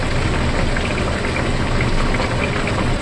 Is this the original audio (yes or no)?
yes